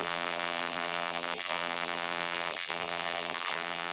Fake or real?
fake